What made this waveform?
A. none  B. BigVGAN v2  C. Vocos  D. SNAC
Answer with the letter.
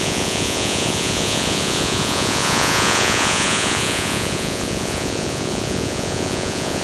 C